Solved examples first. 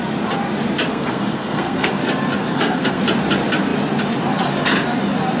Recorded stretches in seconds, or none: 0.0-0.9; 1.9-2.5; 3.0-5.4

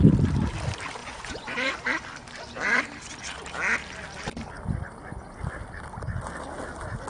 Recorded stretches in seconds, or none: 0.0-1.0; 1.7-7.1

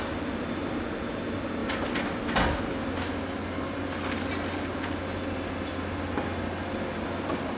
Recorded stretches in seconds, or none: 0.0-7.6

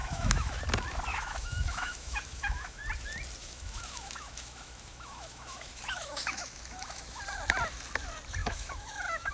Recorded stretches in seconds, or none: 0.6-1.1; 2.8-3.4; 7.2-8.4

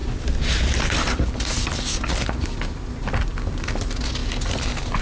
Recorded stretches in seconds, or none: 0.0-5.0